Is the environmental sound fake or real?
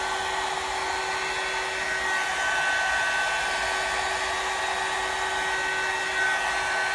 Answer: real